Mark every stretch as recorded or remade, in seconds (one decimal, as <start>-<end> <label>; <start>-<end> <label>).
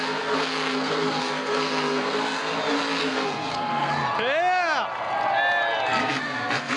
0.0-2.5 remade; 2.5-3.0 recorded; 3.0-3.9 remade; 3.9-6.0 recorded; 6.0-6.8 remade